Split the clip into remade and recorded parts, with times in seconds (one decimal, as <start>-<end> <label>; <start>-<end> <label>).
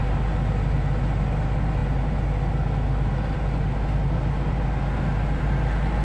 0.0-6.0 recorded